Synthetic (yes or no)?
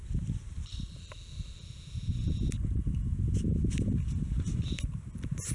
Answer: no